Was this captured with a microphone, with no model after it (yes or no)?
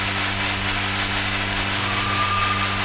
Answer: yes